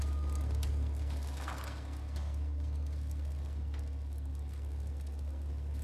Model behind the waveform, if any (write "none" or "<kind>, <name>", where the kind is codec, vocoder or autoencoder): codec, SNAC